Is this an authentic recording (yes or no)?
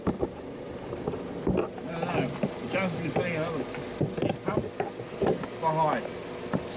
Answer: yes